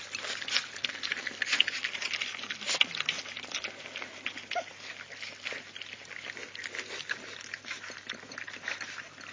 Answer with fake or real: real